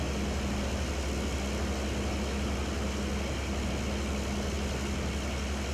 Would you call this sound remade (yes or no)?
no